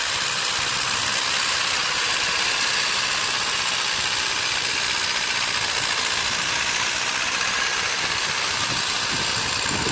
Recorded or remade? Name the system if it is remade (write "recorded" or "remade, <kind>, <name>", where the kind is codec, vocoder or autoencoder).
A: recorded